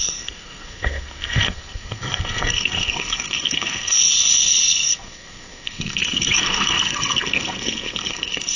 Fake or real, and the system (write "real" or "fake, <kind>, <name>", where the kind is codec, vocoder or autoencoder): fake, codec, SNAC